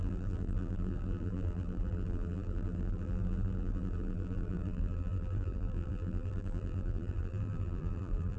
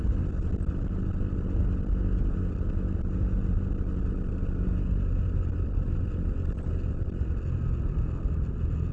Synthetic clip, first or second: first